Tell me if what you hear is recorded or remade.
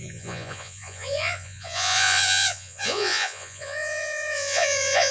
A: remade